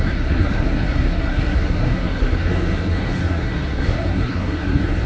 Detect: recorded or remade remade